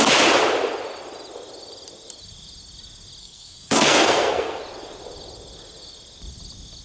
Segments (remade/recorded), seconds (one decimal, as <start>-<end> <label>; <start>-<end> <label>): 0.0-3.2 recorded; 3.2-4.6 remade; 4.6-6.8 recorded